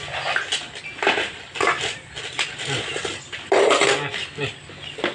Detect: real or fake real